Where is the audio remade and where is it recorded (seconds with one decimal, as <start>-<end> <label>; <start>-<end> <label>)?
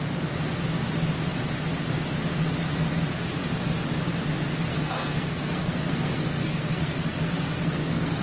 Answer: 0.0-4.7 recorded; 4.7-8.2 remade